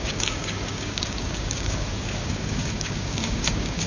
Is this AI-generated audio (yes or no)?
yes